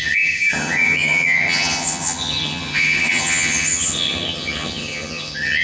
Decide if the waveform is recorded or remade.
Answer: remade